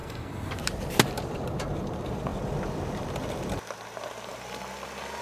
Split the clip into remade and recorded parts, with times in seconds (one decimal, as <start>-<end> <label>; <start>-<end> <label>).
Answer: 0.0-0.5 remade; 0.5-5.2 recorded